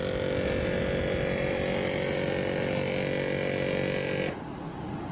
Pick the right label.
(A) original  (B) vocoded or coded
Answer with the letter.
A